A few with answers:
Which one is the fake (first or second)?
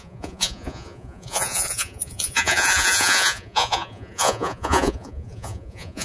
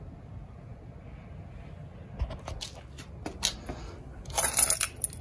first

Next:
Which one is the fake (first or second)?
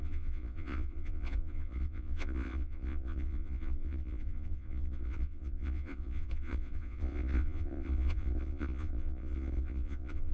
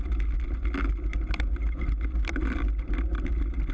first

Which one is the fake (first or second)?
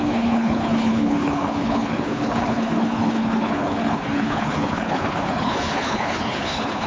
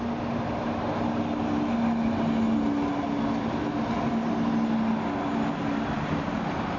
first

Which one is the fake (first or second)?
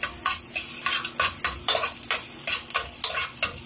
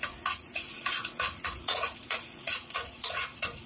second